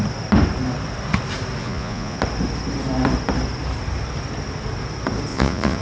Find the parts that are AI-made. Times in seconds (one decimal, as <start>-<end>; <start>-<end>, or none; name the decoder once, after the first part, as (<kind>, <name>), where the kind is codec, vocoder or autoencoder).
1.6-2.2 (vocoder, Vocos); 5.3-5.8